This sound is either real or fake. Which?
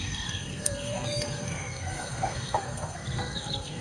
fake